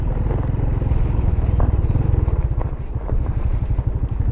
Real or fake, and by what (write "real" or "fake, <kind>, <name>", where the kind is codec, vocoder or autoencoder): real